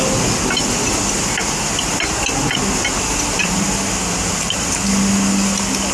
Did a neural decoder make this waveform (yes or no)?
no